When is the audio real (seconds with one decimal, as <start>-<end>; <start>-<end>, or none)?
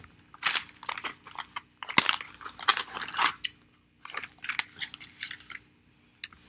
0.0-6.5